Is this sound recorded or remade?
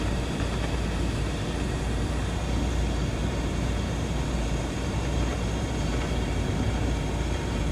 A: remade